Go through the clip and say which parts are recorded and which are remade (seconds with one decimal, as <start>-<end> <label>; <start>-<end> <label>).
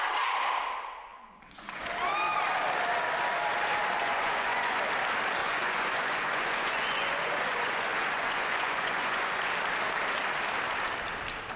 0.0-1.1 recorded; 1.1-1.9 remade; 1.9-4.0 recorded; 4.0-4.8 remade; 4.8-5.4 recorded; 5.4-9.5 remade; 9.5-11.6 recorded